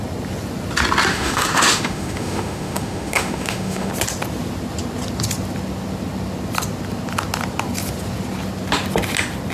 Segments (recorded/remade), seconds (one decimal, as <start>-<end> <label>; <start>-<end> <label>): 0.0-1.1 recorded; 1.1-3.9 remade; 3.9-9.5 recorded